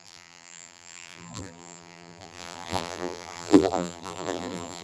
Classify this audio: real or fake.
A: fake